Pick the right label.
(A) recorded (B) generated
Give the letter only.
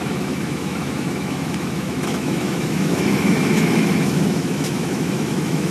B